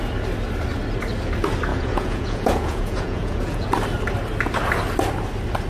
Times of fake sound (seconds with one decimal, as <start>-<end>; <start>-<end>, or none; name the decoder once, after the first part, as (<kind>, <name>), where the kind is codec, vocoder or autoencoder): 1.7-3.7 (vocoder, Vocos)